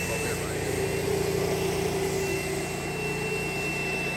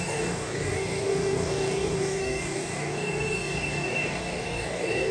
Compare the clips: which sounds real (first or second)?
first